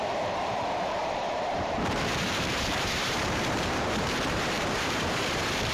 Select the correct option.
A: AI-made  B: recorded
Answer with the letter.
A